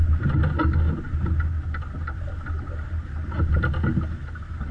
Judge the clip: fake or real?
real